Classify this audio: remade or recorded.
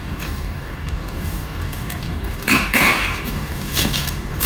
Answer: remade